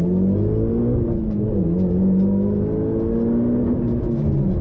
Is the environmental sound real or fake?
real